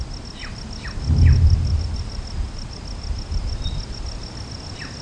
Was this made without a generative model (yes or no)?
yes